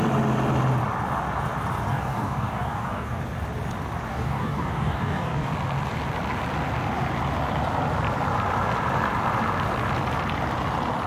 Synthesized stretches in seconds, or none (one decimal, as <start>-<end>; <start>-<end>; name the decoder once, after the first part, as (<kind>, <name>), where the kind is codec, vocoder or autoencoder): 1.9-3.2 (codec, DAC); 4.1-5.5